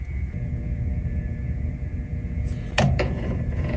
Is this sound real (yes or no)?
no